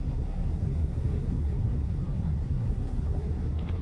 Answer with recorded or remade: remade